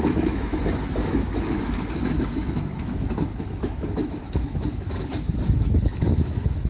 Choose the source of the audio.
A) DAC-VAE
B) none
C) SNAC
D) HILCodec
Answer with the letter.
A